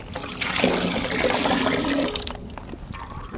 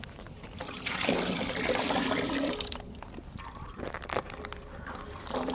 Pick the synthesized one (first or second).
second